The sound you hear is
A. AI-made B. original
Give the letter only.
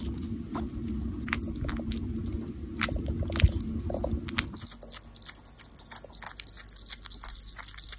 B